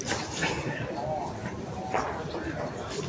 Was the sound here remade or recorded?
recorded